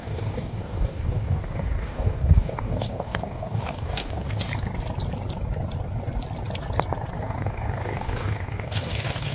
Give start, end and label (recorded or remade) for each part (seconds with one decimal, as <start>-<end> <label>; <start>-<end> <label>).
0.0-4.5 remade; 4.5-7.2 recorded; 7.2-9.3 remade

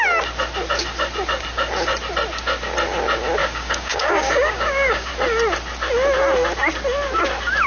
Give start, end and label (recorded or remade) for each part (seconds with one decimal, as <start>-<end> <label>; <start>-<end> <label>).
0.0-3.4 recorded; 3.4-5.1 remade; 5.1-7.7 recorded

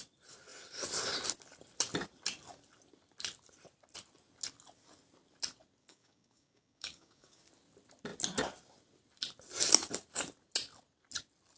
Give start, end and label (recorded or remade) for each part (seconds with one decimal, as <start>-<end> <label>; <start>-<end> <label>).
0.0-5.8 recorded; 5.8-7.4 remade; 7.4-11.6 recorded

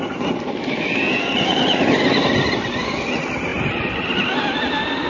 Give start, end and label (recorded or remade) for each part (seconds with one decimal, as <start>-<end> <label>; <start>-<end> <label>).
0.0-5.1 recorded

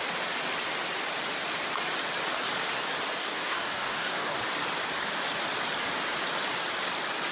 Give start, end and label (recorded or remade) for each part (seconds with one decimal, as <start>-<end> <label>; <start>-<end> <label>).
0.0-3.2 recorded; 3.2-4.4 remade; 4.4-7.3 recorded

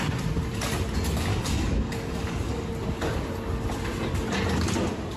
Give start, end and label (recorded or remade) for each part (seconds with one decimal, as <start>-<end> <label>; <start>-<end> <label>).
0.0-1.3 recorded; 1.3-2.7 remade; 2.7-5.2 recorded

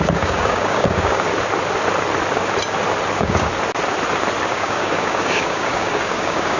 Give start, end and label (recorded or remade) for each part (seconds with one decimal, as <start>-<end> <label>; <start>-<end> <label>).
0.0-1.3 remade; 1.3-3.1 recorded; 3.1-3.5 remade; 3.5-4.5 recorded; 4.5-6.6 remade

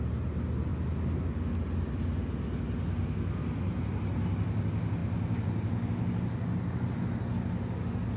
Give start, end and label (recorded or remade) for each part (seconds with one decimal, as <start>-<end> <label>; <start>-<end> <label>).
0.0-8.2 recorded